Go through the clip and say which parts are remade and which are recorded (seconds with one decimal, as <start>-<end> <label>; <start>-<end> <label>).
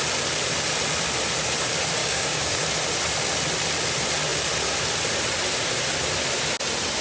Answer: 0.0-2.0 recorded; 2.0-2.6 remade; 2.6-7.0 recorded